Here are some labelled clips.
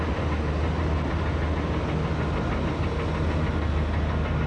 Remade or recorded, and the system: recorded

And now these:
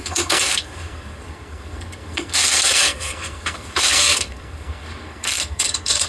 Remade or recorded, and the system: remade, codec, SNAC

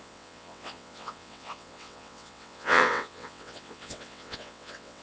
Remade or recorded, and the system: remade, vocoder, WaveNeXt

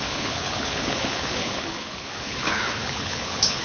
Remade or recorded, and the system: remade, codec, HILCodec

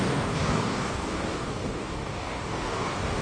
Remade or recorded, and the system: remade, codec, DAC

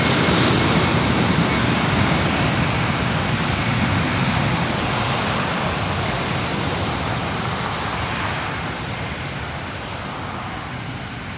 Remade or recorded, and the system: recorded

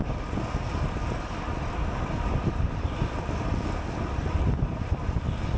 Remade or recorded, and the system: recorded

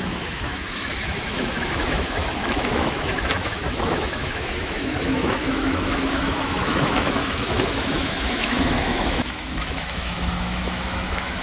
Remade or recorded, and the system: remade, autoencoder, DAC-VAE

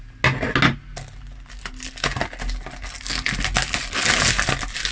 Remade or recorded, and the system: recorded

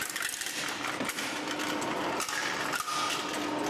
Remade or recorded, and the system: recorded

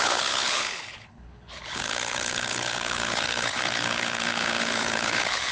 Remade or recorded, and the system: remade, codec, HILCodec